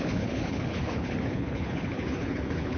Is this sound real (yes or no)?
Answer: no